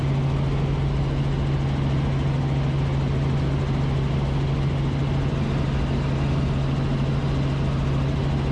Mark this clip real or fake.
real